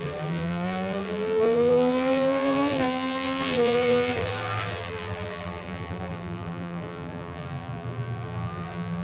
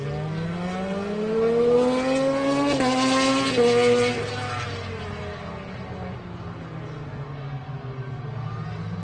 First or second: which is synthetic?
first